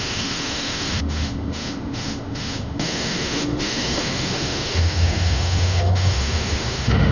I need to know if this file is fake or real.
fake